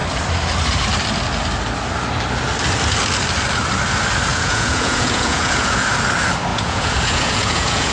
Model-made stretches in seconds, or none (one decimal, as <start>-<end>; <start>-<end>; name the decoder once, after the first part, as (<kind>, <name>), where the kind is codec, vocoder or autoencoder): 4.3-5.9 (vocoder, Vocos); 6.5-7.9